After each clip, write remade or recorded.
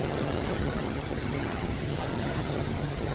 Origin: remade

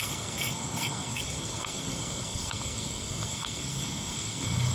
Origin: remade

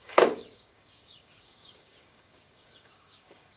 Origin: remade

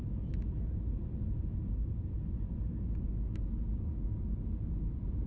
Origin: recorded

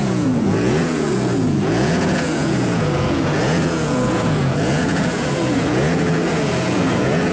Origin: remade